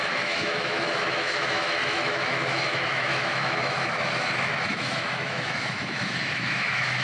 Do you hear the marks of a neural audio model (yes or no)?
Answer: yes